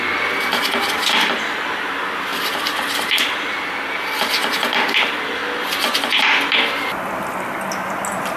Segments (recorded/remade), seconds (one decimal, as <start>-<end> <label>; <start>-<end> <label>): 0.0-8.4 recorded